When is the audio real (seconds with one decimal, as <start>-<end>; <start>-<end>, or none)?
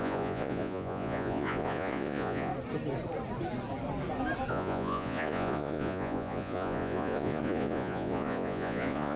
2.5-4.5